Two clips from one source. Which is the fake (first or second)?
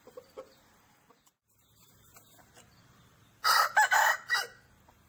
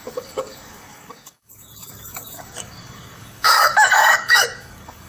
second